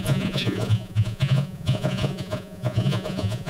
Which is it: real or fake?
fake